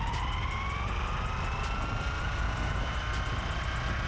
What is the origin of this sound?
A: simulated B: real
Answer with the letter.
B